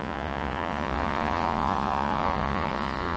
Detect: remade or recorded remade